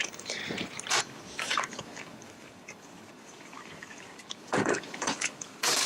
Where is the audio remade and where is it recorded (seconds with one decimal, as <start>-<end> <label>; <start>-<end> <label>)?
0.0-0.4 remade; 0.4-1.0 recorded; 1.0-5.9 remade